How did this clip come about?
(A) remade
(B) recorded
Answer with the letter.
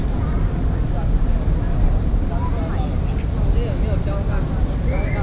B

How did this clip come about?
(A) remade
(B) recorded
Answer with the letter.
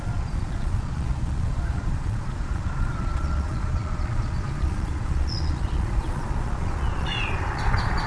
A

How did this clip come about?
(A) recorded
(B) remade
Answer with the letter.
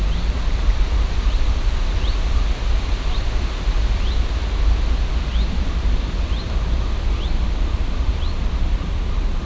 A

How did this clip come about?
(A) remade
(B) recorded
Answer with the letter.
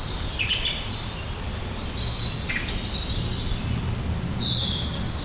B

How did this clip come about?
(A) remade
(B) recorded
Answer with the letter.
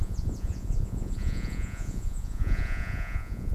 A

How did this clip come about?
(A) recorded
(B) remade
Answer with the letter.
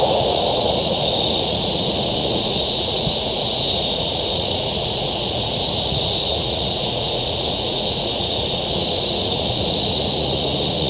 B